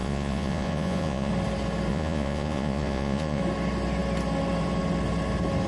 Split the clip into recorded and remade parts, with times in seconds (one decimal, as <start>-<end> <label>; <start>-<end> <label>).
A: 0.0-1.3 remade; 1.3-1.9 recorded; 1.9-3.4 remade; 3.4-5.7 recorded

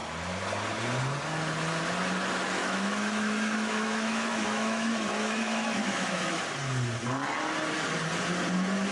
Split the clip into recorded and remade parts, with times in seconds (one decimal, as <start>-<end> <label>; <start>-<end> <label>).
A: 0.0-2.6 recorded; 2.6-6.4 remade; 6.4-8.9 recorded